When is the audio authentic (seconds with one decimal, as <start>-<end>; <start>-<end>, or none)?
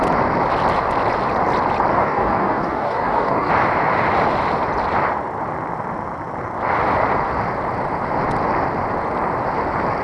0.0-1.9; 3.5-10.0